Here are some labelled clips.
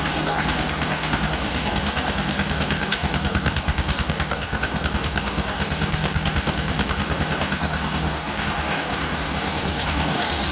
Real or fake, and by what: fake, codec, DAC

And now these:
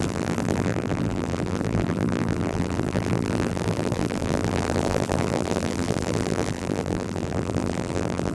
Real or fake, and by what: fake, vocoder, BigVGAN v2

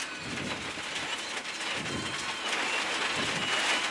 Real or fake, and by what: real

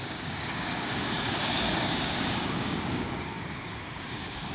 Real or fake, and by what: fake, codec, DAC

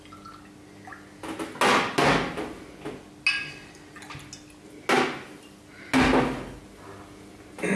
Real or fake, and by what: real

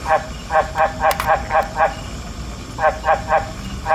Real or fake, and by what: real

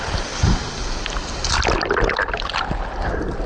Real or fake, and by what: real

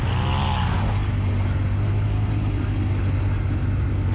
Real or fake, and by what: real